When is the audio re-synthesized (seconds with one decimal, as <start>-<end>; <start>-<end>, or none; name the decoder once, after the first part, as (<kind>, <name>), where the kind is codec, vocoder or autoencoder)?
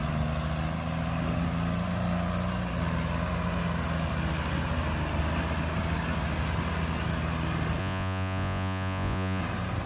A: 7.8-9.4 (vocoder, Vocos)